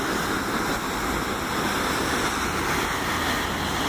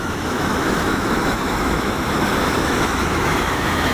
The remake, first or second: second